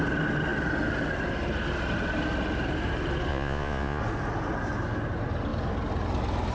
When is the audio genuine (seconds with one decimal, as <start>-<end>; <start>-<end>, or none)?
0.0-3.3; 4.0-6.5